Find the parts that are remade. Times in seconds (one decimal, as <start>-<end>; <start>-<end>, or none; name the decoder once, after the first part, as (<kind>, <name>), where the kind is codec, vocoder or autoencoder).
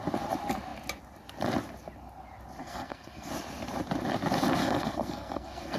2.6-3.3 (codec, SNAC); 4.6-5.8